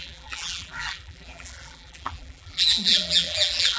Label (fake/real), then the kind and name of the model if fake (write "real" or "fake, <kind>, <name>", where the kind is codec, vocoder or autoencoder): fake, vocoder, BigVGAN v2